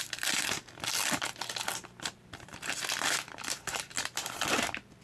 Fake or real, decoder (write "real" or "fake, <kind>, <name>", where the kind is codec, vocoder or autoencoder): real